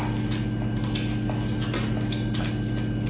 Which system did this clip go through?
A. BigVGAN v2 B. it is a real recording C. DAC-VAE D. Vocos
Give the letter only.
B